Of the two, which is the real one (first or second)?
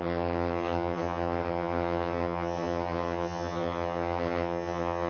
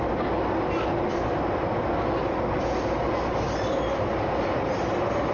second